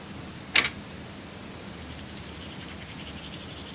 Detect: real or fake real